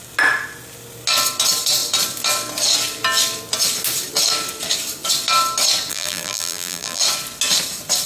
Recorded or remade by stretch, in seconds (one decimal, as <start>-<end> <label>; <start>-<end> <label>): 0.0-5.9 recorded; 5.9-7.0 remade; 7.0-8.1 recorded